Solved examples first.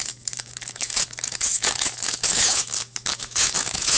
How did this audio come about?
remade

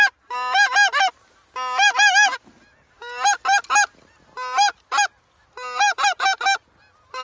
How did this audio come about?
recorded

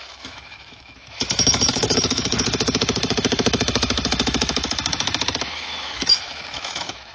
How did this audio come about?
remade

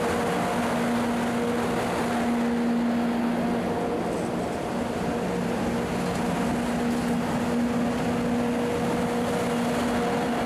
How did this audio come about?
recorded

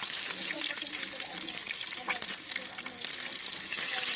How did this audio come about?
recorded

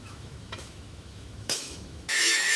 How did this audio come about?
remade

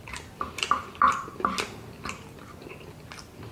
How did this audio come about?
recorded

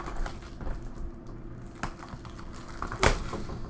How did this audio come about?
recorded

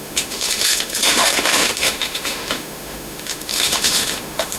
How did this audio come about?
remade